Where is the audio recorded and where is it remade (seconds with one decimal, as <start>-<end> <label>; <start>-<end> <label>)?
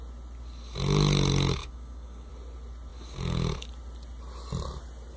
0.0-1.6 recorded; 1.6-2.3 remade; 2.3-5.2 recorded